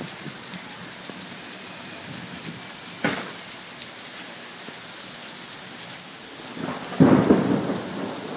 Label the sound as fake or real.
real